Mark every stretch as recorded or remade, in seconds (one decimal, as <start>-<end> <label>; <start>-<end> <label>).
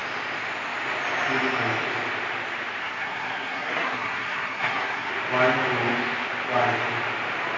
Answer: 0.0-2.8 recorded; 2.8-5.1 remade; 5.1-7.6 recorded